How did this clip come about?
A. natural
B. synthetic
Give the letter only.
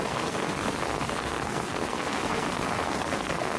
B